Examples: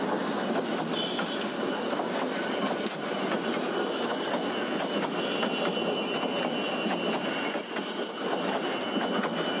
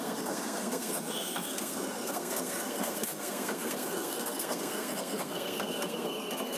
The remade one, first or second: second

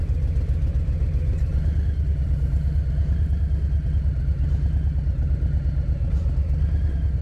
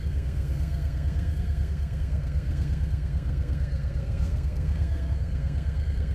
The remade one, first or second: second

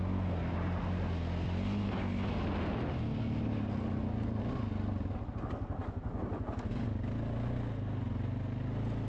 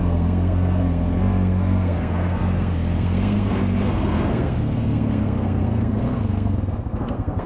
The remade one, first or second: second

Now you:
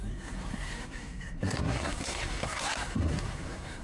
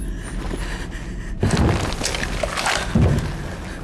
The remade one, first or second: first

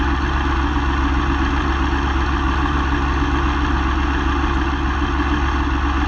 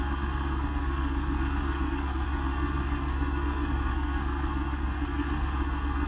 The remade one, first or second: second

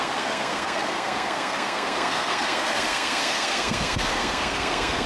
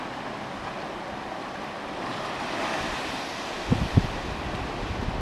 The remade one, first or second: first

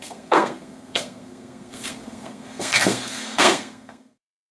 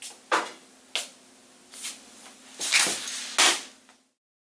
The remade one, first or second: first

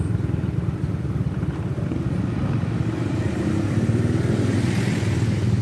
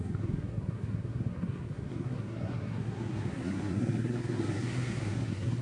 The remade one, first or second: second